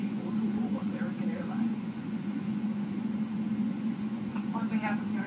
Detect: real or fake fake